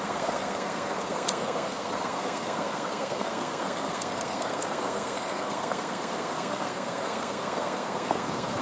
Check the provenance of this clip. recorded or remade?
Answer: remade